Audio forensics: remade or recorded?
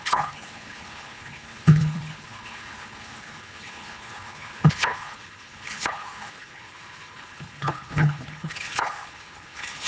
remade